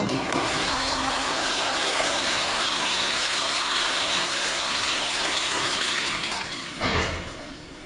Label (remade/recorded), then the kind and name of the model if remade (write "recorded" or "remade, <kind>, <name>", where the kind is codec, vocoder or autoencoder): remade, codec, SNAC